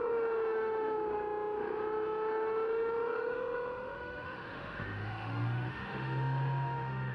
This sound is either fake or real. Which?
fake